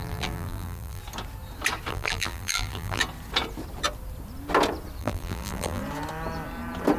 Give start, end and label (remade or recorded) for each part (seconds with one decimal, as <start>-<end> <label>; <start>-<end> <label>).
0.0-1.0 remade; 1.0-1.9 recorded; 1.9-3.0 remade; 3.0-5.0 recorded; 5.0-5.8 remade; 5.8-7.0 recorded